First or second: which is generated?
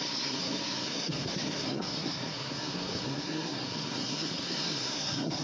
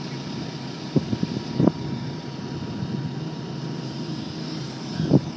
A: first